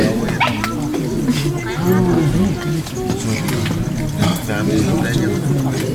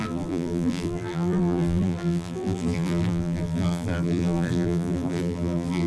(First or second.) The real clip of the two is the first